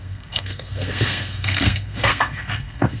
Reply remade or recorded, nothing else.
remade